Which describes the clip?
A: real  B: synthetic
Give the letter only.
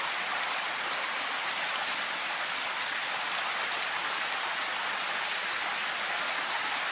A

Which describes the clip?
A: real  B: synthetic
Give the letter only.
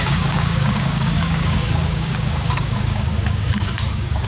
B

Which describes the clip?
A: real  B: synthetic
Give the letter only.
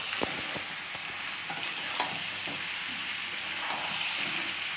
A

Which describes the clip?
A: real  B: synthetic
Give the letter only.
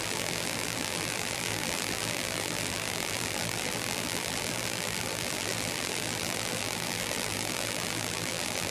B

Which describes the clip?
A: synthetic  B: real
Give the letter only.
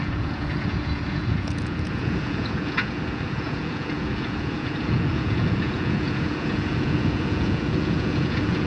A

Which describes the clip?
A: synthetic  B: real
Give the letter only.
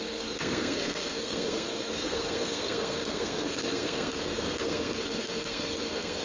A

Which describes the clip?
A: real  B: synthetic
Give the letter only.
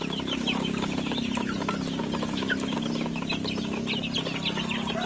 A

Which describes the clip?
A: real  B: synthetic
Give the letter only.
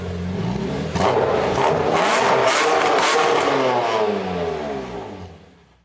A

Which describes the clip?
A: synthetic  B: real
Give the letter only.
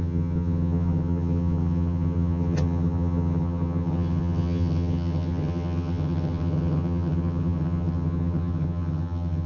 A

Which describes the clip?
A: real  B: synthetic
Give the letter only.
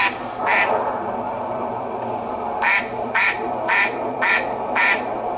B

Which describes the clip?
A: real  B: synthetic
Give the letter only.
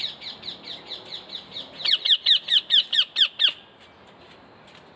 A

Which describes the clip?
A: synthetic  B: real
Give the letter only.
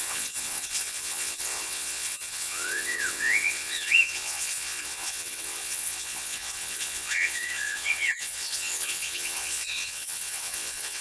A